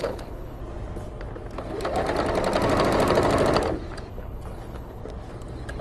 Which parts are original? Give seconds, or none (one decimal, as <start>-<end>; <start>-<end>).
0.6-4.1; 5.0-5.8